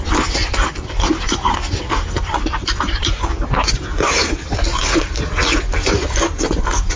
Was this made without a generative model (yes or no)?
yes